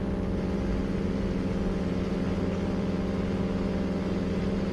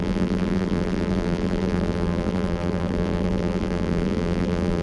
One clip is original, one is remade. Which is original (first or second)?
first